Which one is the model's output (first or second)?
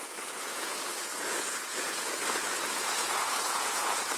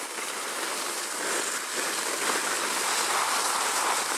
first